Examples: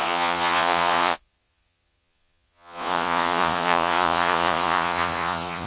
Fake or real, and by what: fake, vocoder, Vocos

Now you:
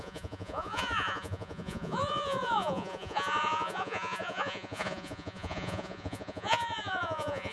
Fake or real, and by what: fake, vocoder, Vocos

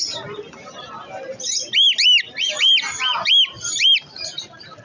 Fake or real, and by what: real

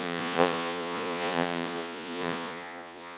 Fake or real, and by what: fake, vocoder, Vocos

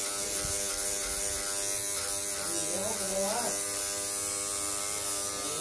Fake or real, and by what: real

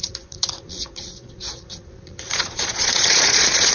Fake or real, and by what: fake, vocoder, Vocos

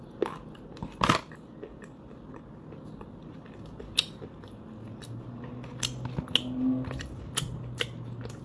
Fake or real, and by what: real